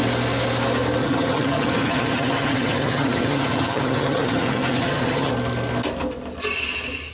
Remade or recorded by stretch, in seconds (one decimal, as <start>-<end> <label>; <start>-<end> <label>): 0.0-1.0 recorded; 1.0-5.3 remade; 5.3-7.1 recorded